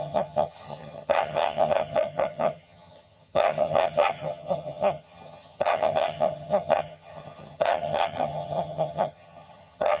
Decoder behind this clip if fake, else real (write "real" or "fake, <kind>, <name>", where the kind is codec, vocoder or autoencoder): fake, vocoder, HiFi-GAN